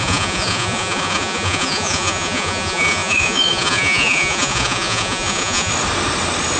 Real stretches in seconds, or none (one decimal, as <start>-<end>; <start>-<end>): 5.7-6.6